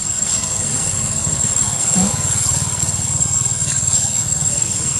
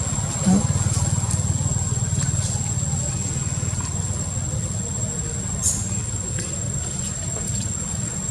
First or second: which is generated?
first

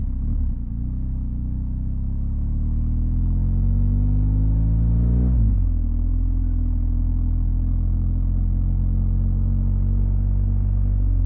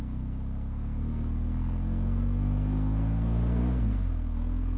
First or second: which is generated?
second